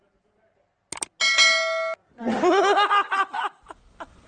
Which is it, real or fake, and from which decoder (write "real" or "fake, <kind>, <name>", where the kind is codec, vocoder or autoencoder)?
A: real